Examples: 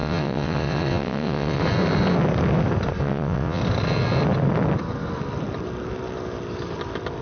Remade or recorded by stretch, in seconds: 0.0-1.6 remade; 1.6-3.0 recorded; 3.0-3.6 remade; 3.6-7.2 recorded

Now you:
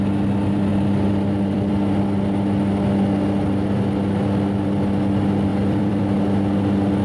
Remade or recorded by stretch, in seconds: 0.0-0.7 recorded; 0.7-1.7 remade; 1.7-5.5 recorded; 5.5-6.2 remade; 6.2-7.0 recorded

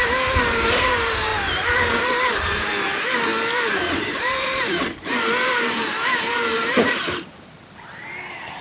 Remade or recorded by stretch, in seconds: 0.0-1.3 remade; 1.3-2.0 recorded; 2.0-2.7 remade; 2.7-4.1 recorded; 4.1-8.6 remade

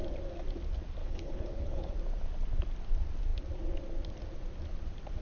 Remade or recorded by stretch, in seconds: 0.0-1.0 recorded; 1.0-1.9 remade; 1.9-5.2 recorded